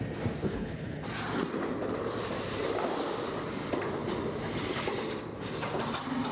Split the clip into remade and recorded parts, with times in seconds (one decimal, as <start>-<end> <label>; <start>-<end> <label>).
0.0-0.4 recorded; 0.4-1.0 remade; 1.0-6.3 recorded